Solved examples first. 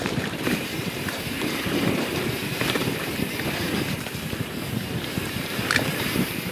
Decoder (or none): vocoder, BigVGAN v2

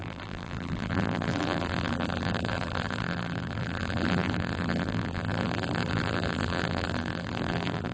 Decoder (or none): vocoder, BigVGAN v2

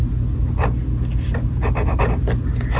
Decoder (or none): none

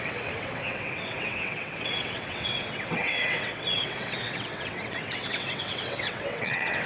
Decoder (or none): vocoder, WaveNeXt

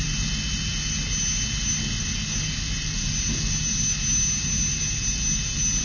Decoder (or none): none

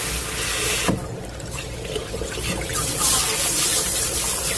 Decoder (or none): none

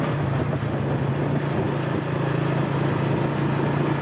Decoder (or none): none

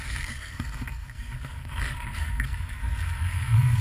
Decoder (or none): codec, SNAC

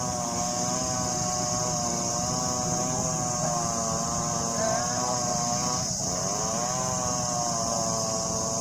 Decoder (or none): none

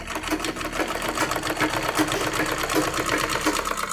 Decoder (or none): none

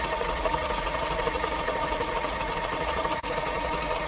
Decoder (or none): vocoder, Vocos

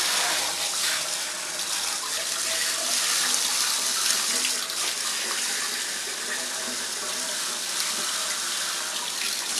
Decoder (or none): none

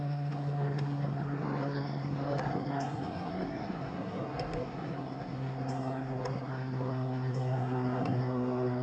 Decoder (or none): codec, SNAC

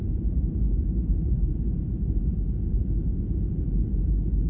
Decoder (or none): vocoder, BigVGAN v2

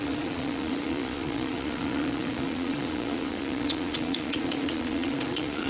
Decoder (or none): vocoder, Vocos